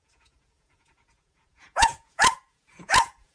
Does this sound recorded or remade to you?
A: remade